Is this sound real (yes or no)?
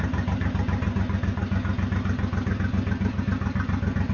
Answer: yes